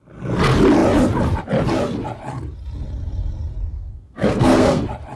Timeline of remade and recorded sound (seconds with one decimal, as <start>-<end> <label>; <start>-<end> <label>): 0.0-3.7 recorded; 3.7-4.8 remade; 4.8-5.2 recorded